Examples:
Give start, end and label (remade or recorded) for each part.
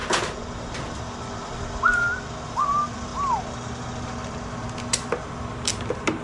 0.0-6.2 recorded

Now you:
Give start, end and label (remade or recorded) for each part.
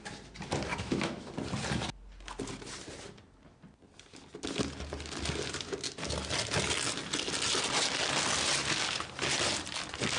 0.0-0.7 recorded; 0.7-1.3 remade; 1.3-10.2 recorded